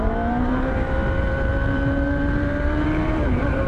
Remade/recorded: remade